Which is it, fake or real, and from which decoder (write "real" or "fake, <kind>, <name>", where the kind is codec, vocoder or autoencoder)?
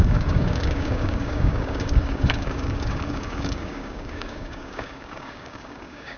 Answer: fake, codec, DAC